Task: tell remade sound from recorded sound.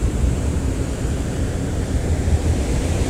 remade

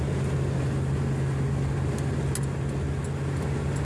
recorded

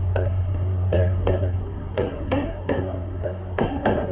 remade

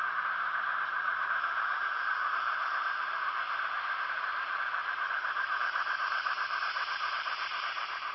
remade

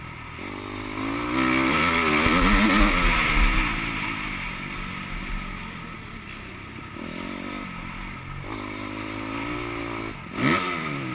recorded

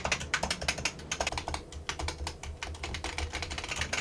recorded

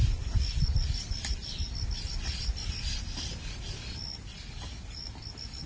recorded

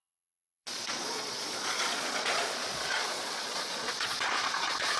remade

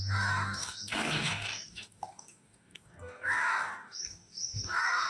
remade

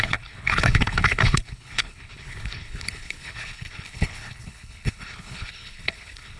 remade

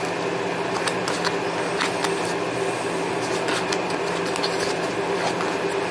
recorded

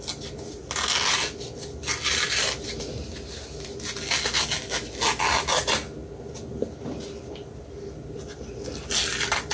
recorded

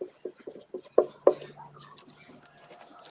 recorded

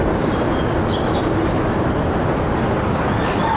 recorded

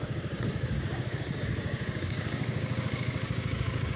remade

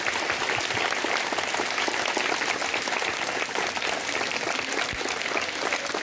recorded